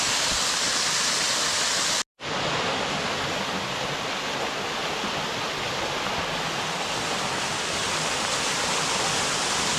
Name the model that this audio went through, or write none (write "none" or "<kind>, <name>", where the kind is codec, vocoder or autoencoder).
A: none